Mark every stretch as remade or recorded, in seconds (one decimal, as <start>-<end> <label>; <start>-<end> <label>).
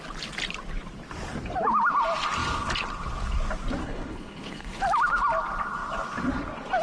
0.0-3.8 recorded; 3.8-4.8 remade; 4.8-6.8 recorded